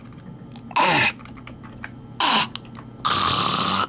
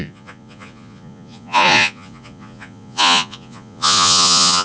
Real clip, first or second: first